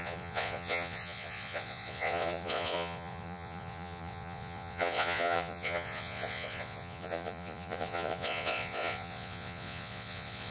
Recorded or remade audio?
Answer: remade